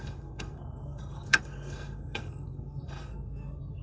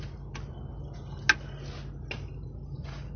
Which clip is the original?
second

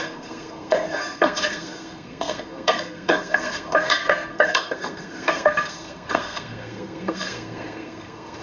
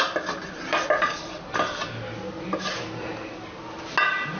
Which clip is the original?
second